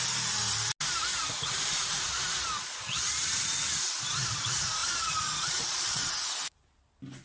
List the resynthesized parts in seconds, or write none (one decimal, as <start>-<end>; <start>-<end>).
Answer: 4.8-6.1